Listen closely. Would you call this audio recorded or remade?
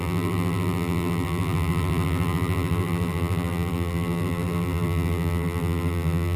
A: remade